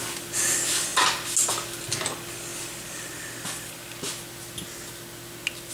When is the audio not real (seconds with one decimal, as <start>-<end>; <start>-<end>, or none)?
none